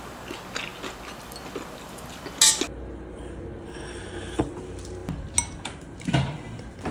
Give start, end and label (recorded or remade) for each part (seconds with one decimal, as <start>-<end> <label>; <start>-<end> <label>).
0.0-6.9 recorded